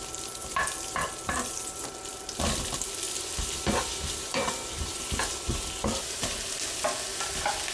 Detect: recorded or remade remade